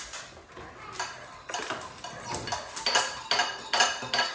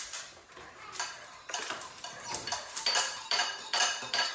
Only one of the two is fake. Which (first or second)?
second